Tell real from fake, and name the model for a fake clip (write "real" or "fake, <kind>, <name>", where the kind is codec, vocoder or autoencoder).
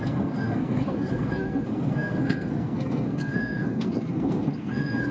fake, codec, SNAC